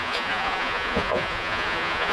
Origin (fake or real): fake